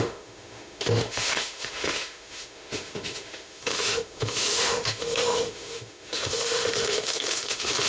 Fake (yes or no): yes